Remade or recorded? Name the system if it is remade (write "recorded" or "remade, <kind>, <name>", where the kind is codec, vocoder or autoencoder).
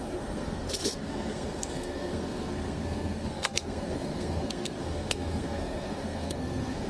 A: remade, codec, SNAC